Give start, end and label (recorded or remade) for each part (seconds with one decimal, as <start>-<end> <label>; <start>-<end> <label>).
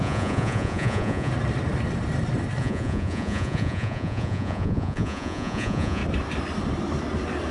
0.0-1.3 remade; 1.3-2.6 recorded; 2.6-6.0 remade; 6.0-7.5 recorded